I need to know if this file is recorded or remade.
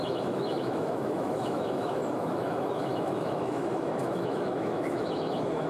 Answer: remade